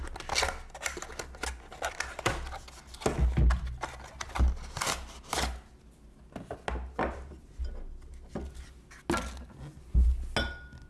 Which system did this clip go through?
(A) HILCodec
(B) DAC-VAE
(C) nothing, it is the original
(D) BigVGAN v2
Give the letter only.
C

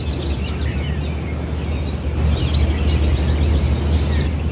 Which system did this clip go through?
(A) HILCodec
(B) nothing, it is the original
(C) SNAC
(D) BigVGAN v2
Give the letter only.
B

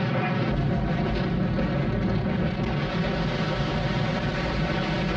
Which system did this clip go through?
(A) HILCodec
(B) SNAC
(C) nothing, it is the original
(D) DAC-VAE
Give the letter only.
C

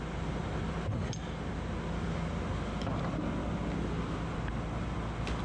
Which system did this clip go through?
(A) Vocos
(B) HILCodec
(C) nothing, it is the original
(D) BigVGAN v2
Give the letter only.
C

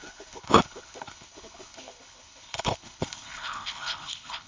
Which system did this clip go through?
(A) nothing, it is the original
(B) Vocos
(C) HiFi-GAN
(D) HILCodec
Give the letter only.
D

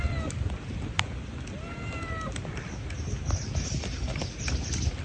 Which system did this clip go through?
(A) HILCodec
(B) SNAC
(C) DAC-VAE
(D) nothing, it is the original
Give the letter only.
D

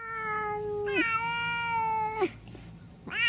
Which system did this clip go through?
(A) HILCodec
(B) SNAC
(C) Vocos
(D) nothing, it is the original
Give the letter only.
D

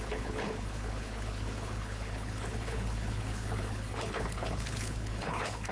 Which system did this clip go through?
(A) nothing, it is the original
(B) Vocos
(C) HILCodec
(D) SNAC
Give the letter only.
C